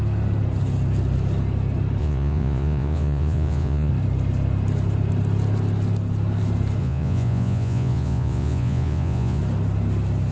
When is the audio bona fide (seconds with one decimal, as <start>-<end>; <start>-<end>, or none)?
0.0-2.0; 3.9-6.8; 9.4-10.3